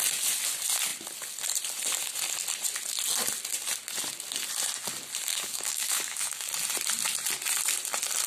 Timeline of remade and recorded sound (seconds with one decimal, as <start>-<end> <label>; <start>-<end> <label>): 0.0-5.3 recorded; 5.3-6.5 remade; 6.5-8.3 recorded

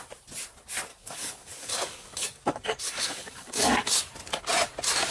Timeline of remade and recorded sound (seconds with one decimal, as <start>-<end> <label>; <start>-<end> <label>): 0.0-0.9 recorded; 0.9-4.0 remade; 4.0-5.1 recorded

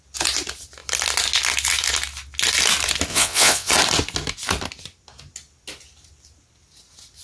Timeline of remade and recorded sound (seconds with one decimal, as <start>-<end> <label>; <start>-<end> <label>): 0.0-3.1 recorded; 3.1-3.7 remade; 3.7-7.2 recorded

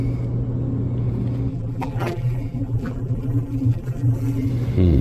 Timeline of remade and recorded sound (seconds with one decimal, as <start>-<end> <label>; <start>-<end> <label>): 0.0-1.5 recorded; 1.5-4.5 remade; 4.5-5.0 recorded

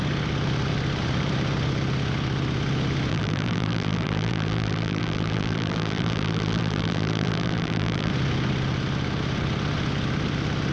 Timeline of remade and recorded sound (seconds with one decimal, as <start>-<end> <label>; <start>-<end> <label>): 0.0-3.1 recorded; 3.1-8.1 remade; 8.1-10.7 recorded

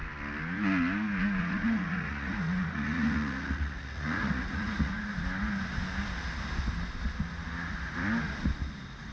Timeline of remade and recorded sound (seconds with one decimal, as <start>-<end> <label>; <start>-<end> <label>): 0.0-1.4 recorded; 1.4-5.1 remade; 5.1-9.1 recorded

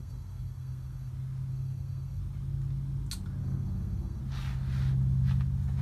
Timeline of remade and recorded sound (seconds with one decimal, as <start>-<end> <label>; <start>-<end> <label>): 0.0-1.1 remade; 1.1-1.5 recorded; 1.5-2.2 remade; 2.2-3.4 recorded; 3.4-4.2 remade; 4.2-5.8 recorded